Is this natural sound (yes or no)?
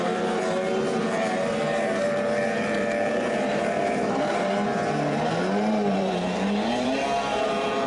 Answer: no